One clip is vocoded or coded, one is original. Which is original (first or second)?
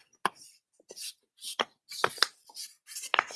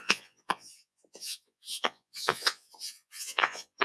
first